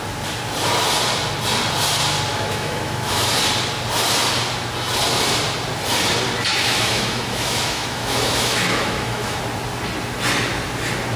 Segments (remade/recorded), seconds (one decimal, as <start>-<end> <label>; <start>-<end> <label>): 0.0-2.3 recorded; 2.3-3.3 remade; 3.3-6.5 recorded; 6.5-9.4 remade; 9.4-11.2 recorded